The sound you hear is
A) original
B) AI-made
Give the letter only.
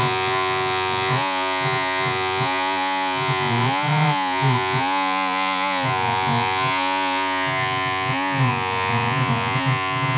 B